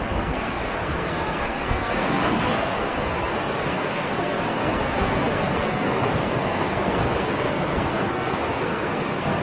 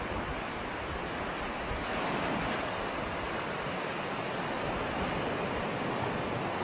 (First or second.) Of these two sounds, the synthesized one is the first